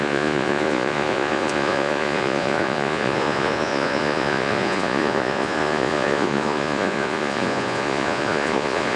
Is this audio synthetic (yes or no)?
yes